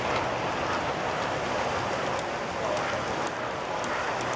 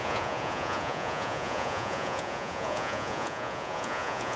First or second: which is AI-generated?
second